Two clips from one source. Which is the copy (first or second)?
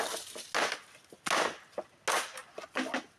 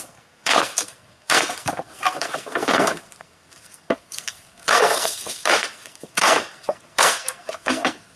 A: second